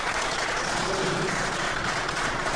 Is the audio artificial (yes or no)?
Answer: yes